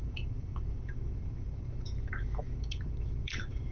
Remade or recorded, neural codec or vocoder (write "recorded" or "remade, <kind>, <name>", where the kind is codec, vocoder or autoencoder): remade, autoencoder, DAC-VAE